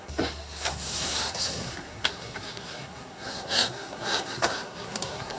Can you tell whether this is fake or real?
fake